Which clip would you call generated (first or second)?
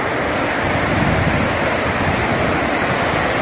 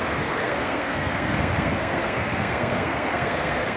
second